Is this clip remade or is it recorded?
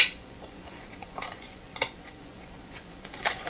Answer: remade